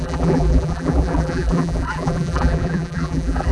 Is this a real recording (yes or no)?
no